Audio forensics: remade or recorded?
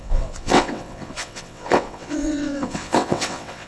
remade